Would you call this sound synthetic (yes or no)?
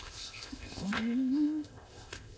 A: yes